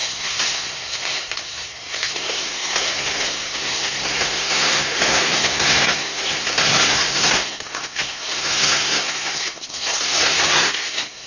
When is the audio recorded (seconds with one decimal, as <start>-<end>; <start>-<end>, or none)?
none